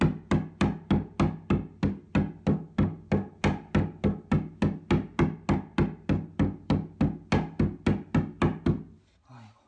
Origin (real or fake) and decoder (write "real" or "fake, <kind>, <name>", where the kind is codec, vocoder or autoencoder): real